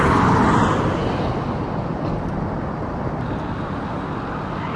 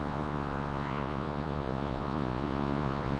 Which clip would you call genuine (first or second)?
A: first